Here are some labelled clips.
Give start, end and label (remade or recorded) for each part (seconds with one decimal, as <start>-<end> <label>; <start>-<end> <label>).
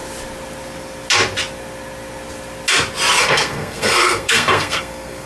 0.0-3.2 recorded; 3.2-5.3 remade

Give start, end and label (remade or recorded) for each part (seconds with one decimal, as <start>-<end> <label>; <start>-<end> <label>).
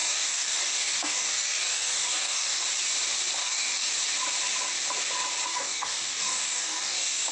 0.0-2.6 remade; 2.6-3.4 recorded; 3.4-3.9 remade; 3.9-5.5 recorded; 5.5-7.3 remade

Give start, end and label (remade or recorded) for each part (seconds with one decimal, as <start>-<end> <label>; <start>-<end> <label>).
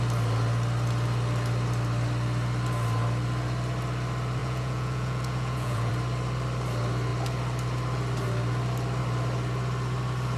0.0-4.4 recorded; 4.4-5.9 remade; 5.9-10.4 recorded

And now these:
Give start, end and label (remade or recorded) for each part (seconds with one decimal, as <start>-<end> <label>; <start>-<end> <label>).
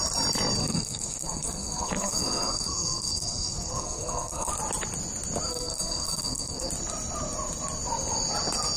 0.0-0.6 recorded; 0.6-4.5 remade; 4.5-5.5 recorded; 5.5-6.7 remade; 6.7-8.8 recorded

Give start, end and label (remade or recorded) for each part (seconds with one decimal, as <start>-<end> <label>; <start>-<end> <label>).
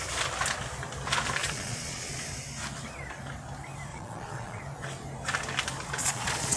0.0-1.4 recorded; 1.4-2.2 remade; 2.2-3.9 recorded; 3.9-4.6 remade; 4.6-6.0 recorded; 6.0-6.6 remade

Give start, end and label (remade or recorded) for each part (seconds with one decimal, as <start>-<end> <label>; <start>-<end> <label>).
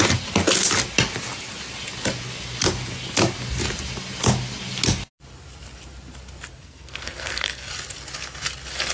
0.0-6.5 recorded; 6.5-7.7 remade; 7.7-8.9 recorded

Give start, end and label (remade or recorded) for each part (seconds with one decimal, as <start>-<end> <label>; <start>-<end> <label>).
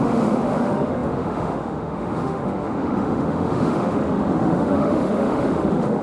0.0-6.0 remade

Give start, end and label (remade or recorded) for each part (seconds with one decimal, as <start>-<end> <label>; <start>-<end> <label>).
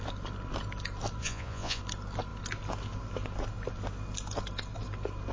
0.0-1.2 recorded; 1.2-1.8 remade; 1.8-5.3 recorded